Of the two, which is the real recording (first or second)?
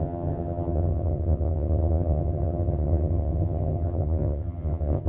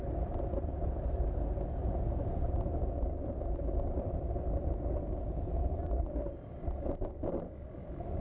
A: second